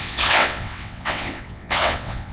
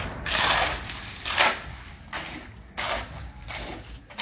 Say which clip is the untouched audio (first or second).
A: second